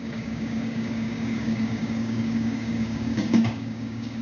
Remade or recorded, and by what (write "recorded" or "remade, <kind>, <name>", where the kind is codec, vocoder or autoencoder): remade, codec, DAC